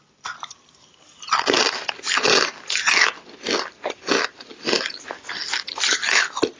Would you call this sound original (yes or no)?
yes